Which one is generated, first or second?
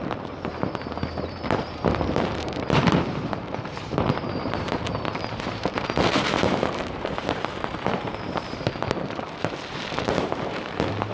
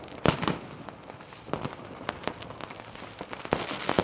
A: first